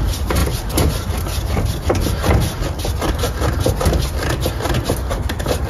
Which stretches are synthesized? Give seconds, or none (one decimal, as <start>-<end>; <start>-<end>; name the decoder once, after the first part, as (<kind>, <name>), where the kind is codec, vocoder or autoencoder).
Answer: none

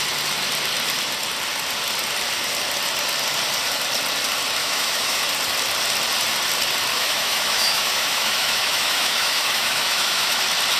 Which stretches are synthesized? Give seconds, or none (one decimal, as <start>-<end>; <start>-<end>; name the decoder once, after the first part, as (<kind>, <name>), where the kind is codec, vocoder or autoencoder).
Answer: 4.6-5.2 (autoencoder, DAC-VAE); 6.9-10.4

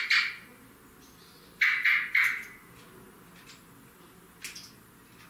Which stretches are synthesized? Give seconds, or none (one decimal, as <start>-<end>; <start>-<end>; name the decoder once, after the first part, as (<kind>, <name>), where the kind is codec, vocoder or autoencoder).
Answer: none

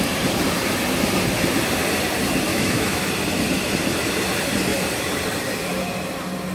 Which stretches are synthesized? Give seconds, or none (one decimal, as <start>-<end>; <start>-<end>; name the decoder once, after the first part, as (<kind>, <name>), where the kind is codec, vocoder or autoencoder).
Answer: 2.5-3.1 (autoencoder, DAC-VAE)

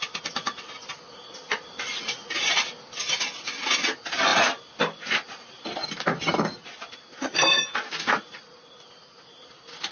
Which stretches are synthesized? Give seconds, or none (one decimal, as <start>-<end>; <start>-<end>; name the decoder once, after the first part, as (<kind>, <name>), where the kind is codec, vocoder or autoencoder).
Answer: none

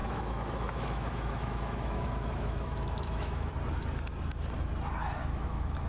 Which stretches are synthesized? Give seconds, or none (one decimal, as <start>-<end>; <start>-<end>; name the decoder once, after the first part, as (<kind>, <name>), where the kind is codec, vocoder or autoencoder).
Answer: 0.0-3.5 (autoencoder, DAC-VAE); 5.2-5.9

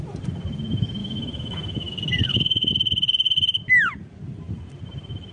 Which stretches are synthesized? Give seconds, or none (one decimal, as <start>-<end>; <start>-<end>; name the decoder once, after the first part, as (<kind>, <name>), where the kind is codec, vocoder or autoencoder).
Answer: 1.0-2.7 (autoencoder, DAC-VAE)

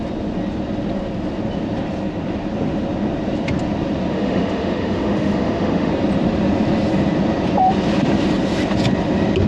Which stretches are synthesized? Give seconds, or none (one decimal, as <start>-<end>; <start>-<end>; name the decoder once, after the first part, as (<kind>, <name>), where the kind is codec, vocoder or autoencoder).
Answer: 4.1-5.9 (autoencoder, DAC-VAE)